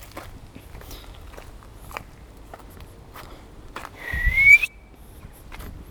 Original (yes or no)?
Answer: no